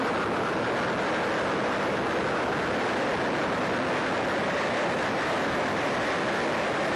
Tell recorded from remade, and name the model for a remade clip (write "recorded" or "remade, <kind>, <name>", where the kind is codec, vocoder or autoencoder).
recorded